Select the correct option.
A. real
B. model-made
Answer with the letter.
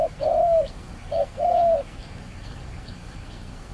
B